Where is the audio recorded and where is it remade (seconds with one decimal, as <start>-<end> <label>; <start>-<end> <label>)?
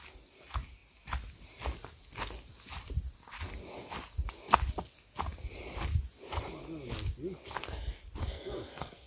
0.0-8.2 recorded; 8.2-9.1 remade